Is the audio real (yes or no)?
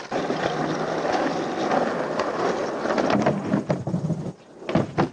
yes